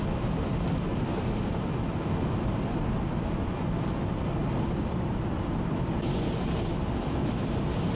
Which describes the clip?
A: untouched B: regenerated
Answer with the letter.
A